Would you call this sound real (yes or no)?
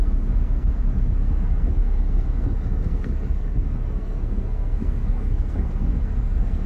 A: no